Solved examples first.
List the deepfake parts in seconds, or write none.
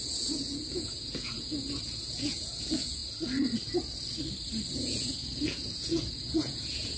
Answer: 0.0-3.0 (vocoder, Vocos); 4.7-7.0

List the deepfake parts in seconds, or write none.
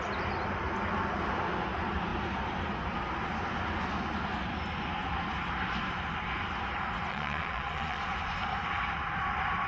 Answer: 7.1-8.0 (vocoder, Vocos)